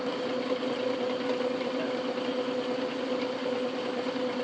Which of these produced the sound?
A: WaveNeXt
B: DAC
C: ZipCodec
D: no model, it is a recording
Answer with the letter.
D